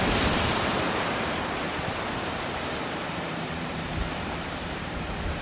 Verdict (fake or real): fake